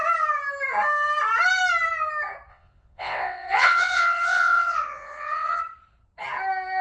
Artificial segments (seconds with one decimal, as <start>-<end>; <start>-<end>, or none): 2.5-5.6